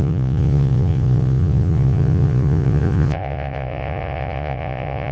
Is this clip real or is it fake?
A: fake